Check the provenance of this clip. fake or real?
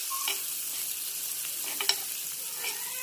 real